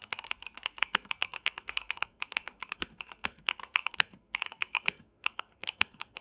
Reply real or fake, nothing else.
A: fake